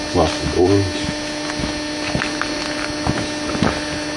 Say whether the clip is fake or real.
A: real